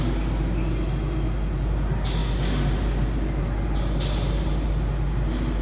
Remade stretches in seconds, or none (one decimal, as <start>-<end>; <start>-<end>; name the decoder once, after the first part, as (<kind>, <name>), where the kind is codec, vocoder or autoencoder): none